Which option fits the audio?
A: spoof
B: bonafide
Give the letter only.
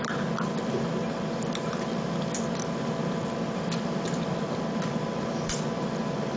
A